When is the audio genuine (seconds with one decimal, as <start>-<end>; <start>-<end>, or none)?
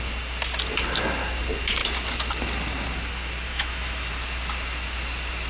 0.0-3.5; 4.1-5.5